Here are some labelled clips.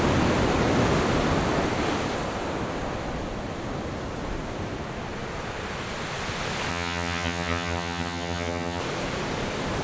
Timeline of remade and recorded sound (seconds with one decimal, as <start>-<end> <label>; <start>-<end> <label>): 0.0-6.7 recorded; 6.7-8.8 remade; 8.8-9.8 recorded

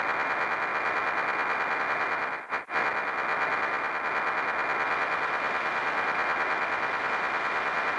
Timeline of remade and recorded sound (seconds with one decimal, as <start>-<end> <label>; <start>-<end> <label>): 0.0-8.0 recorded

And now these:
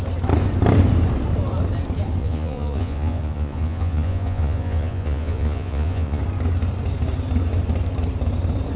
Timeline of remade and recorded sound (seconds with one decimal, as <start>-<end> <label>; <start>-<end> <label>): 0.0-2.2 recorded; 2.2-6.2 remade; 6.2-8.8 recorded

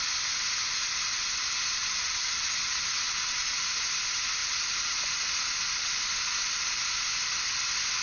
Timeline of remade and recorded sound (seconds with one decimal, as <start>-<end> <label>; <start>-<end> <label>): 0.0-1.7 recorded; 1.7-3.6 remade; 3.6-8.0 recorded

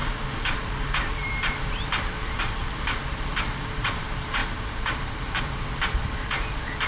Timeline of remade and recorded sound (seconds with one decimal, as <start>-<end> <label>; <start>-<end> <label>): 0.0-3.0 remade; 3.0-3.8 recorded; 3.8-6.9 remade

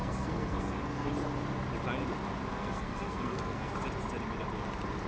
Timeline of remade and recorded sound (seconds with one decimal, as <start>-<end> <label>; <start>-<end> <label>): 0.0-1.1 remade; 1.1-2.5 recorded; 2.5-3.7 remade; 3.7-5.1 recorded

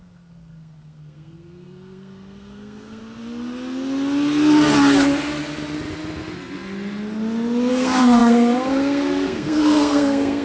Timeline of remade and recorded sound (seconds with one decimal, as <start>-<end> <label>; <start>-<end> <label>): 0.0-3.0 remade; 3.0-7.7 recorded; 7.7-10.4 remade

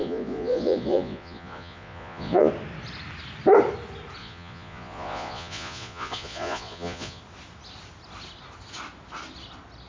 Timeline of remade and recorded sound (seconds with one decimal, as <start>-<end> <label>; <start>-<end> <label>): 0.0-2.5 remade; 2.5-4.2 recorded; 4.2-7.2 remade; 7.2-9.9 recorded